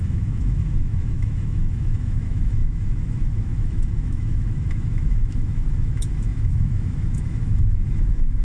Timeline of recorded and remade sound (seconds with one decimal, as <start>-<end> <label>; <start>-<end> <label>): 0.0-8.4 remade